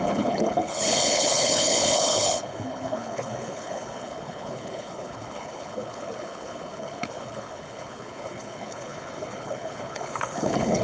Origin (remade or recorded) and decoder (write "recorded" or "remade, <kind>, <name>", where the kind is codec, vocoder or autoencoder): remade, codec, HILCodec